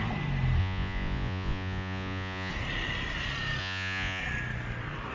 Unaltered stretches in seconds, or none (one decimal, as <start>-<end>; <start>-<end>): 0.0-0.6; 2.5-3.6; 4.2-5.1